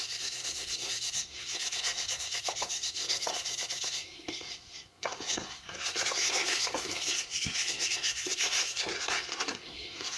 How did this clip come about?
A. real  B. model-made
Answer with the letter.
B